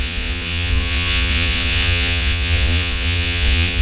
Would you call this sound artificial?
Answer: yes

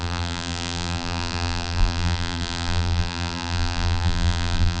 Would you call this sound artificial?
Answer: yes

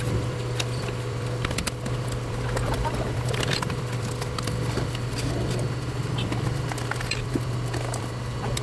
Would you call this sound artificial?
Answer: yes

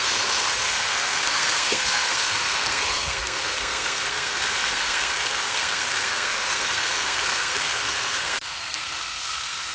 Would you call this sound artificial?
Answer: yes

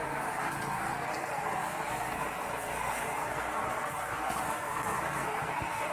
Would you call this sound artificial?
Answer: yes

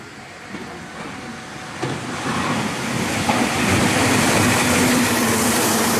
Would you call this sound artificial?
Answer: yes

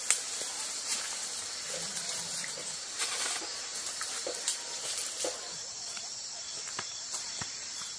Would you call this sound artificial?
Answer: yes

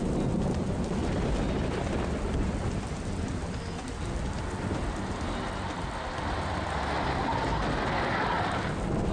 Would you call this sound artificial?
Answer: no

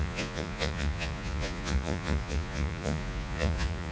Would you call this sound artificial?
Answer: yes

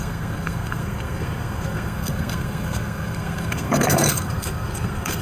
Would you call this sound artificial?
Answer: yes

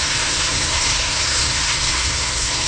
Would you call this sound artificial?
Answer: yes